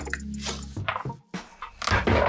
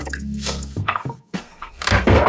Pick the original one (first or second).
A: first